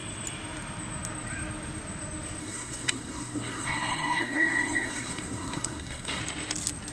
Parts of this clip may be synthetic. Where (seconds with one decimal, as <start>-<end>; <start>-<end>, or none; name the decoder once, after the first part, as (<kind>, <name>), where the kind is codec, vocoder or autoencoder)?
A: 2.4-6.2 (codec, SNAC)